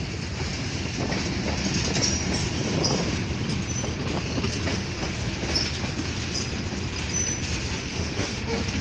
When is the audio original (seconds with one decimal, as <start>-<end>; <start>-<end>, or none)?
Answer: 0.0-4.7; 5.3-7.9; 8.4-8.8